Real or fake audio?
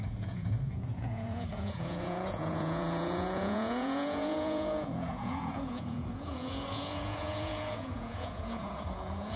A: fake